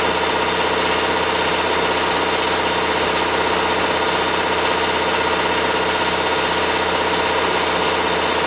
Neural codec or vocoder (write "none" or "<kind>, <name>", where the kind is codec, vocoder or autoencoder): none